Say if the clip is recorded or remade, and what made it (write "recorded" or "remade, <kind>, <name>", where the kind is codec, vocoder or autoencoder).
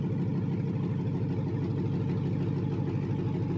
recorded